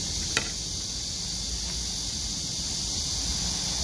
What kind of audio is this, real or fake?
real